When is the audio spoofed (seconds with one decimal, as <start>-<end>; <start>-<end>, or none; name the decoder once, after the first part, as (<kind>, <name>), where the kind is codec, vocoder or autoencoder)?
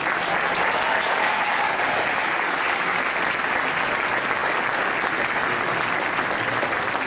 0.9-1.8 (codec, DAC); 2.2-3.0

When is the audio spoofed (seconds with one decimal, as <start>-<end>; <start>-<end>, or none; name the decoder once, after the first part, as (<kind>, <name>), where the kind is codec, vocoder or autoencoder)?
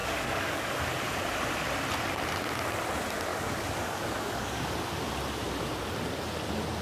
0.0-0.7 (codec, DAC); 3.3-4.6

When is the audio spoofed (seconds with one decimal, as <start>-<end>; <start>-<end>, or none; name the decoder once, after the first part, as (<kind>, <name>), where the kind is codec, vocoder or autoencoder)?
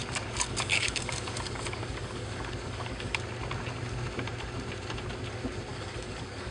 0.0-3.2 (codec, DAC); 5.7-6.5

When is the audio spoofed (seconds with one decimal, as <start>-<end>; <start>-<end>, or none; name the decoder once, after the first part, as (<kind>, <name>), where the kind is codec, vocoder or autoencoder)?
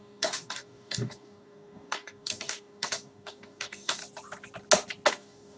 0.0-4.0 (codec, DAC); 5.1-5.6